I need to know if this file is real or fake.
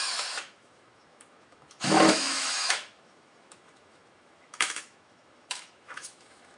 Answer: fake